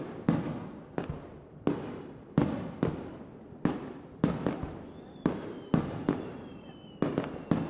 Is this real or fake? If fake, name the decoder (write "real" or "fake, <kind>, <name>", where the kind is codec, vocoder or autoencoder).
real